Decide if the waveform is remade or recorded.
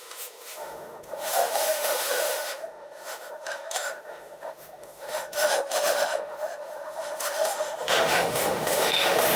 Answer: remade